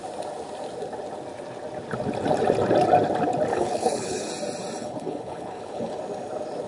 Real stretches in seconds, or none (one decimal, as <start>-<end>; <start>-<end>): 0.0-3.5; 4.3-4.8; 6.0-6.7